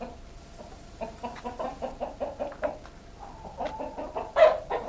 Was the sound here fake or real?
real